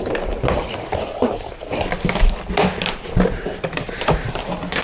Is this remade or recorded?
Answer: recorded